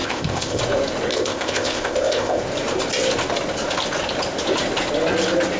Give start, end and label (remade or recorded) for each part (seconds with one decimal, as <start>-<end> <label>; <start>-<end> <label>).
0.0-0.6 remade; 0.6-1.1 recorded; 1.1-2.4 remade; 2.4-5.6 recorded